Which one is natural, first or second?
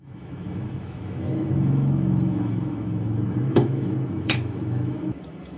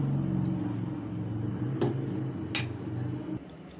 second